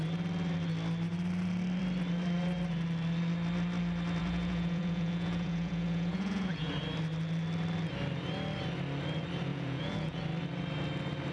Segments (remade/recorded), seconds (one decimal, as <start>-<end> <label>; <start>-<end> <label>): 0.0-4.2 recorded; 4.2-6.7 remade; 6.7-9.5 recorded; 9.5-10.2 remade; 10.2-11.3 recorded